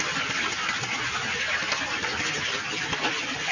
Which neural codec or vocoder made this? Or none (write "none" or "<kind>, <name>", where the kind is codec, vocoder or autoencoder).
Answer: none